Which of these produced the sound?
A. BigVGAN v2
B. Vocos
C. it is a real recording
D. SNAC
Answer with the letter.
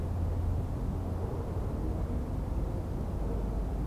C